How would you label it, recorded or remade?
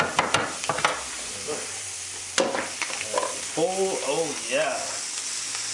recorded